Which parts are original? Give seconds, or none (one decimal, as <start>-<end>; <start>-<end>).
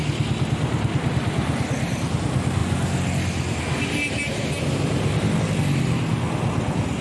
0.0-7.0